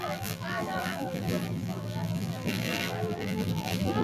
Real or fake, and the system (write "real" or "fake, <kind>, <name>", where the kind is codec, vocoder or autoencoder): fake, vocoder, BigVGAN v2